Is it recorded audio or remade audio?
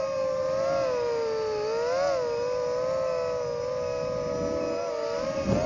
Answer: recorded